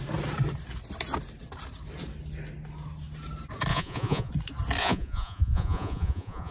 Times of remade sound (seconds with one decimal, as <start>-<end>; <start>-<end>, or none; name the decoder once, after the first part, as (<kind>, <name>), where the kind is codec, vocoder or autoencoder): 3.7-4.3 (vocoder, Vocos); 4.8-6.5